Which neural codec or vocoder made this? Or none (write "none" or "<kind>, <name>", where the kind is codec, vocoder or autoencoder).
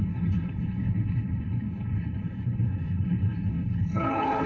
codec, HILCodec